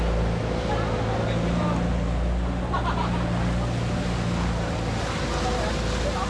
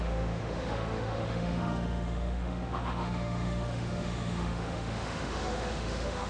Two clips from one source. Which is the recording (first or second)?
first